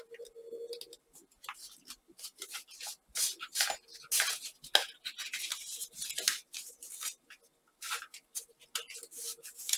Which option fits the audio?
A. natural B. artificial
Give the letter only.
A